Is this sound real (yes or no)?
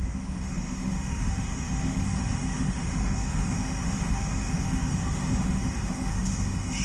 no